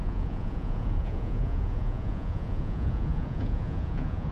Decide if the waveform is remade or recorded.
remade